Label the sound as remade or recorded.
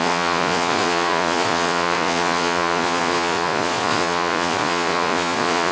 remade